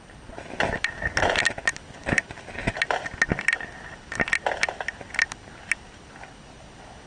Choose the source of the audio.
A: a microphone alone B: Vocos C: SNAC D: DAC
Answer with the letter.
A